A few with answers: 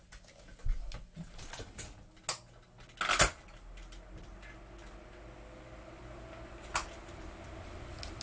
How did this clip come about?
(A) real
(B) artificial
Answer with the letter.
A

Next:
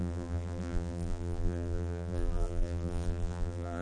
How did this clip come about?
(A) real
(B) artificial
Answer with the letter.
B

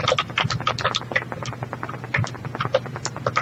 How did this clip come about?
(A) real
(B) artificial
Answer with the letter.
A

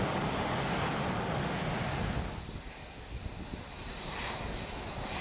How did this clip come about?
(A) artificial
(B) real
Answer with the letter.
B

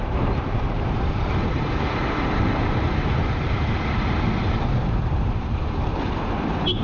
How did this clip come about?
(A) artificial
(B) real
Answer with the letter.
A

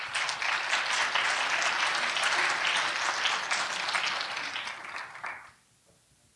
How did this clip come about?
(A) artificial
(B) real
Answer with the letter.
B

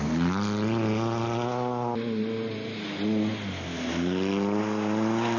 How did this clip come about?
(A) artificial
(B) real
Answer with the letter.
B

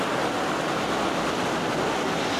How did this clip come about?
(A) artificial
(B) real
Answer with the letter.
B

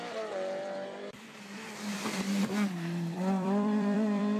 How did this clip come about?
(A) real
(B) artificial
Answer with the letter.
B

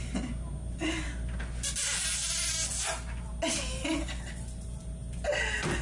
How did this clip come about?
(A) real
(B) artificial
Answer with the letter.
A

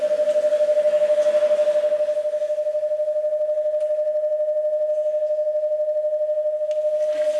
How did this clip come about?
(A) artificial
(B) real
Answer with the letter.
B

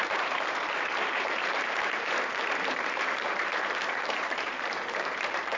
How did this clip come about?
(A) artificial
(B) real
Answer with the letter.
A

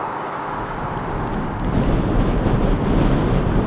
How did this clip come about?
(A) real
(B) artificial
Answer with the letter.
A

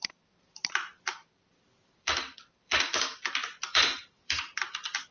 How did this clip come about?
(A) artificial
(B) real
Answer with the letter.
A